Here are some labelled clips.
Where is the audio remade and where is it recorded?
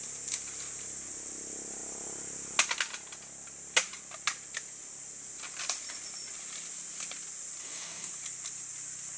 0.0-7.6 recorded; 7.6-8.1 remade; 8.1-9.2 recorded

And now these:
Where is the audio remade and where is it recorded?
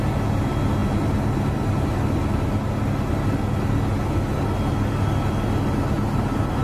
0.0-6.6 recorded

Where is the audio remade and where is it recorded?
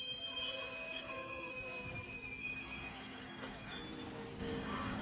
0.0-0.9 recorded; 0.9-1.5 remade; 1.5-2.4 recorded; 2.4-3.8 remade; 3.8-4.4 recorded; 4.4-5.0 remade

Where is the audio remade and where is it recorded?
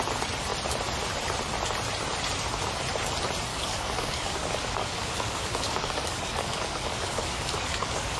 0.0-3.5 recorded; 3.5-8.2 remade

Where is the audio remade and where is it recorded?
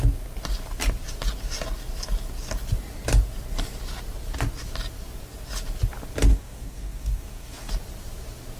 0.0-6.3 recorded; 6.3-7.7 remade; 7.7-8.6 recorded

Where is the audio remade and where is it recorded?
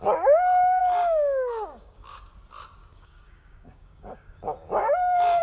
0.0-0.8 recorded; 0.8-2.2 remade; 2.2-2.8 recorded; 2.8-5.4 remade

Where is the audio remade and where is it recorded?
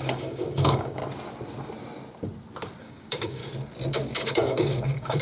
0.0-1.0 remade; 1.0-2.8 recorded; 2.8-3.4 remade; 3.4-3.9 recorded; 3.9-5.2 remade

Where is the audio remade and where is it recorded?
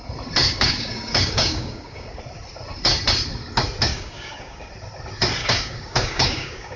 0.0-0.4 recorded; 0.4-2.2 remade; 2.2-3.9 recorded; 3.9-4.7 remade; 4.7-5.4 recorded; 5.4-6.8 remade